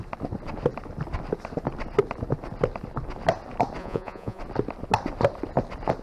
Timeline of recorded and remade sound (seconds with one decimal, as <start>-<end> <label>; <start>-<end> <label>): 0.0-3.8 recorded; 3.8-4.4 remade; 4.4-6.0 recorded